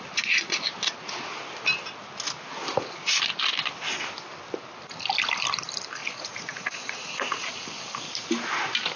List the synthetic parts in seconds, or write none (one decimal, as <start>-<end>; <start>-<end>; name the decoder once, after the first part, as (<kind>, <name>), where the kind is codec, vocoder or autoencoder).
6.0-7.5 (vocoder, Vocos)